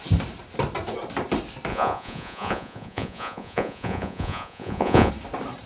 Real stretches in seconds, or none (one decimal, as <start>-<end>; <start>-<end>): 0.0-1.7; 5.1-5.7